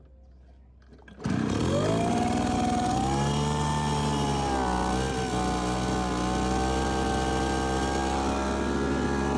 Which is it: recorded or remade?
recorded